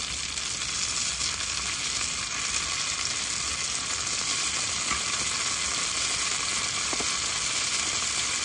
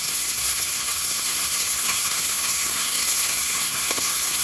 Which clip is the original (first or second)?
first